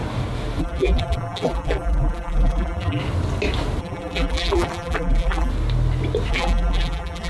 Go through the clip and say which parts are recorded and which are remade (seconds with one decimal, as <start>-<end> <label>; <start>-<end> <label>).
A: 0.0-0.6 recorded; 0.6-3.0 remade; 3.0-3.8 recorded; 3.8-5.5 remade; 5.5-6.3 recorded; 6.3-7.3 remade